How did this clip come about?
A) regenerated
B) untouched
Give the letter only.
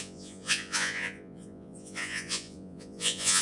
A